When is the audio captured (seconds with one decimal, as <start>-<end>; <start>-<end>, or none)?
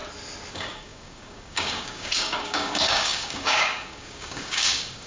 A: 0.0-0.5